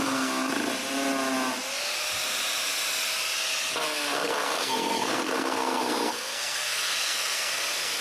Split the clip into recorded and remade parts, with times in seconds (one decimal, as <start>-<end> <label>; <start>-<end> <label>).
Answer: 0.0-0.5 remade; 0.5-3.7 recorded; 3.7-8.0 remade

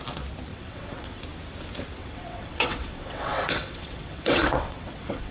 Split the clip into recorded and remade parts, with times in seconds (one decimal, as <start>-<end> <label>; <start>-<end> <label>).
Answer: 0.0-0.5 recorded; 0.5-1.2 remade; 1.2-2.0 recorded; 2.0-5.3 remade

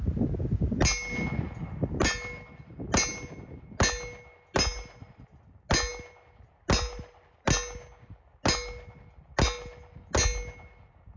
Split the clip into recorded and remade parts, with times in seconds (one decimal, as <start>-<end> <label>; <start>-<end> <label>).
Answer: 0.0-11.2 recorded